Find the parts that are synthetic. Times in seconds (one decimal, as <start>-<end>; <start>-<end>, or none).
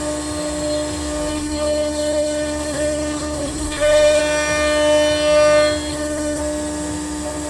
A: 1.3-4.2; 5.9-6.4